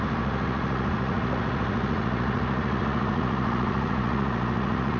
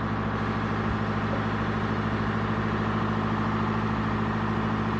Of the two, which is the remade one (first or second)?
first